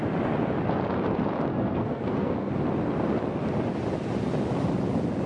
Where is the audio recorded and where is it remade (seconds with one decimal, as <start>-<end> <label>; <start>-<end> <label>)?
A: 0.0-1.5 recorded; 1.5-2.5 remade; 2.5-5.3 recorded